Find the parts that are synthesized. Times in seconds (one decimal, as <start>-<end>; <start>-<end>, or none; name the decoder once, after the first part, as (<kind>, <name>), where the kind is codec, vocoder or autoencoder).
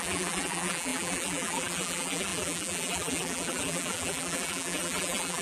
0.0-5.4 (vocoder, BigVGAN v2)